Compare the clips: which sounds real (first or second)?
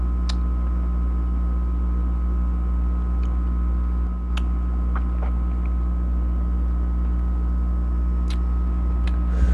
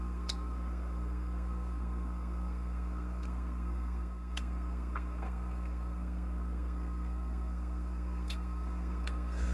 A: first